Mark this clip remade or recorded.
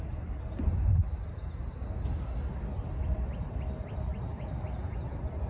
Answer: recorded